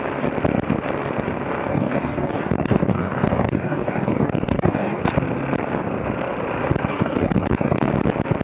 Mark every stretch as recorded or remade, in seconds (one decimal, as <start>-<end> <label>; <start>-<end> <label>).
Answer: 0.0-1.7 recorded; 1.7-5.0 remade; 5.0-6.9 recorded; 6.9-7.9 remade; 7.9-8.4 recorded